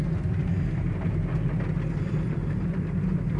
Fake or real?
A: real